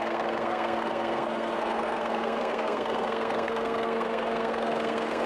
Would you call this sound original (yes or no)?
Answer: no